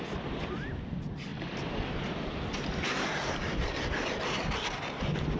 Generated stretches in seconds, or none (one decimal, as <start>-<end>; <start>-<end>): none